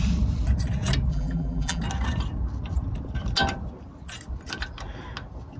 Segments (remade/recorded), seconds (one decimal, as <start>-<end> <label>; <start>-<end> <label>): 0.0-1.1 recorded; 1.1-1.8 remade; 1.8-5.6 recorded